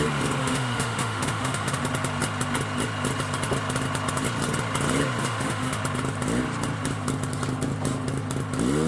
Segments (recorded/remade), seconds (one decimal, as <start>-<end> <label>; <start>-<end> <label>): 0.0-0.4 recorded; 0.4-1.8 remade; 1.8-5.2 recorded; 5.2-5.8 remade; 5.8-8.9 recorded